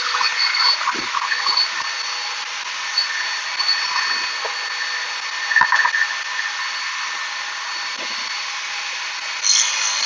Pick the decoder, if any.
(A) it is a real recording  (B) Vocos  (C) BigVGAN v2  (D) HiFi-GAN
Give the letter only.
A